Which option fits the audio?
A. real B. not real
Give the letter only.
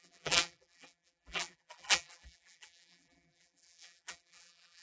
B